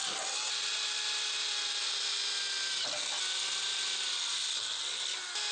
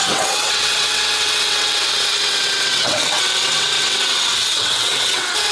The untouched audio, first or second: first